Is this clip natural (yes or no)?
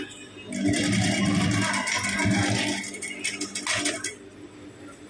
yes